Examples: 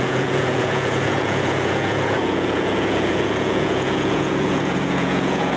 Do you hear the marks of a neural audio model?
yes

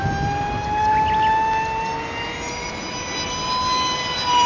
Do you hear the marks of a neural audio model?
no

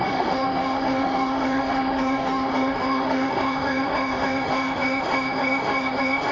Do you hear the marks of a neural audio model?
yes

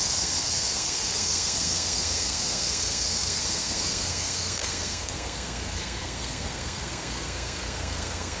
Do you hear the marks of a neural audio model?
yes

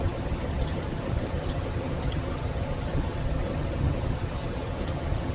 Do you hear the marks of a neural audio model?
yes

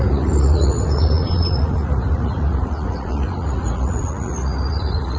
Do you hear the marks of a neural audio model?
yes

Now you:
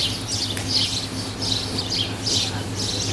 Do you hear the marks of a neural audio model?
no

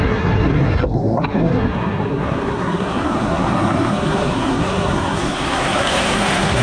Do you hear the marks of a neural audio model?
yes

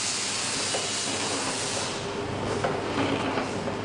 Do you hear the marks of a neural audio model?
no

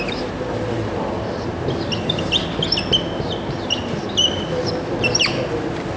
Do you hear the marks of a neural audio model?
no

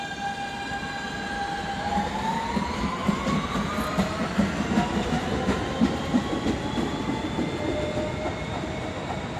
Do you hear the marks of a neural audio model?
no